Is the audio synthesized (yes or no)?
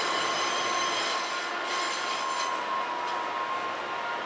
no